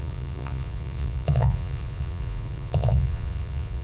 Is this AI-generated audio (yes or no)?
yes